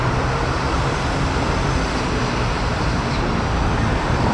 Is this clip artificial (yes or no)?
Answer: yes